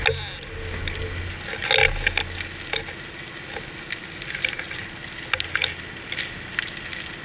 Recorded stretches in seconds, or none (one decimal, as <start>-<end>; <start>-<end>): 0.0-7.2